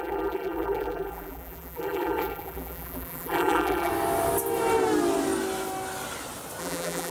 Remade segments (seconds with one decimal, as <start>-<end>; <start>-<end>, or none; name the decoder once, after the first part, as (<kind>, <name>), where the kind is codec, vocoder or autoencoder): 0.0-3.9 (vocoder, BigVGAN v2); 6.6-7.1